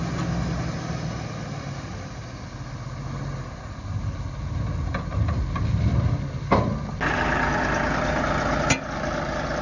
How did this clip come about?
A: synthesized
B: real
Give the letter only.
B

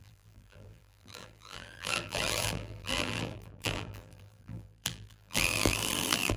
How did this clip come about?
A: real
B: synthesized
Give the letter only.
B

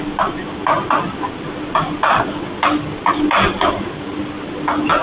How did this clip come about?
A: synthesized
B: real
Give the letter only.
B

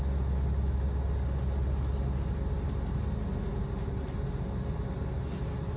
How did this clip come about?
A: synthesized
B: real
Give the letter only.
B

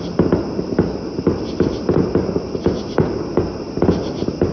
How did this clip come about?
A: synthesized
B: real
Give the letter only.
B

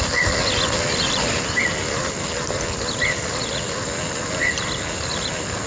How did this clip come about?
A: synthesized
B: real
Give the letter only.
B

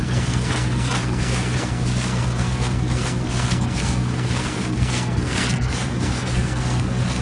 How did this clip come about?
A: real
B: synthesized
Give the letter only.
B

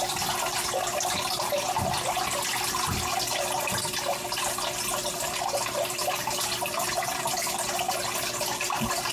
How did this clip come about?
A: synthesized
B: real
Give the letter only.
B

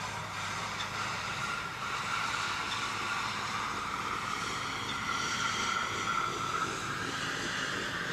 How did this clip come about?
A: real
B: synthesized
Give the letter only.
B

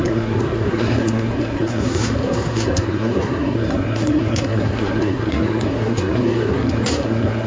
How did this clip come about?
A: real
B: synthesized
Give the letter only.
B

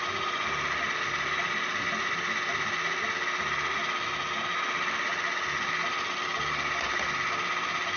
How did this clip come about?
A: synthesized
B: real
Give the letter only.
B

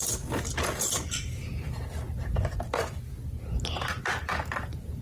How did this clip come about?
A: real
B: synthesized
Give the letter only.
A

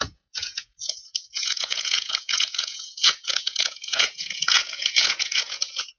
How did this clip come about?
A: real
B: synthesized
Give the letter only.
B